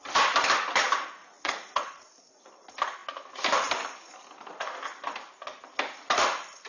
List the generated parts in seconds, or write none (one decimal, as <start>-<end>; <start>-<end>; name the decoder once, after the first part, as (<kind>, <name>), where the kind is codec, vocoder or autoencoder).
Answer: 1.2-2.5 (vocoder, Vocos)